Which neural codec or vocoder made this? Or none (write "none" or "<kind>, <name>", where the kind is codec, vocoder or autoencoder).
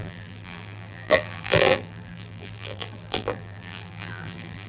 vocoder, BigVGAN v2